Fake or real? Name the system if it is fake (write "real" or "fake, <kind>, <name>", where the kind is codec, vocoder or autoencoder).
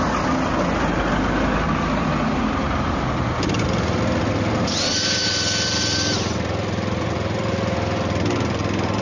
real